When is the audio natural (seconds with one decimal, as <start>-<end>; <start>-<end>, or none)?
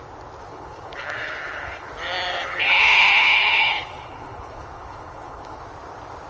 0.0-0.5; 1.9-2.3; 5.6-6.3